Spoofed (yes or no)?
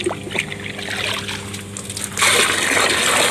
no